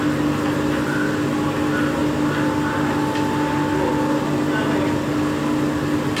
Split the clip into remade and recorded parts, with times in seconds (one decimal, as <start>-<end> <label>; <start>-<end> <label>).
0.0-6.2 recorded